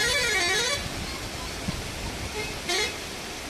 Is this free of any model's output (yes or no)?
yes